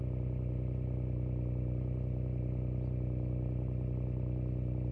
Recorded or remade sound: recorded